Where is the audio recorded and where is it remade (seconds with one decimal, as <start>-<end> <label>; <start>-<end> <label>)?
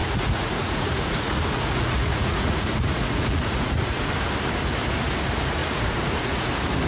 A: 0.0-4.1 remade; 4.1-5.6 recorded; 5.6-6.5 remade; 6.5-6.9 recorded